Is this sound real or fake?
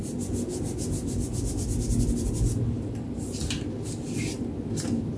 real